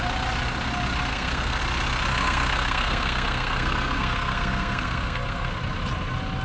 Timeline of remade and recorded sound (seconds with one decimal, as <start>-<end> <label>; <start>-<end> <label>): 0.0-1.1 recorded; 1.1-1.6 remade; 1.6-2.1 recorded; 2.1-5.5 remade; 5.5-6.4 recorded